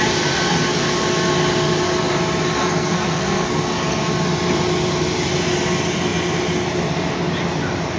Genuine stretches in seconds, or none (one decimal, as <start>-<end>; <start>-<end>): 0.0-2.6; 4.0-8.0